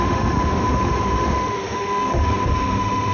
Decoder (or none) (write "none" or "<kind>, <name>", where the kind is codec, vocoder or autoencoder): autoencoder, DAC-VAE